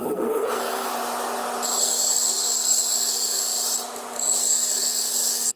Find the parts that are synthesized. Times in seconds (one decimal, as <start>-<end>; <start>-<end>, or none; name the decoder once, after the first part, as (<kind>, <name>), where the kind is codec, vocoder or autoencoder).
0.0-0.9 (codec, SNAC); 1.8-3.4; 4.4-5.6